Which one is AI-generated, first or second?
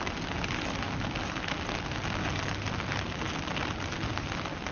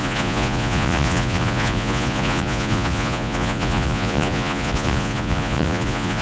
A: second